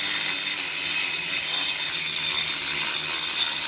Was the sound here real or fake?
real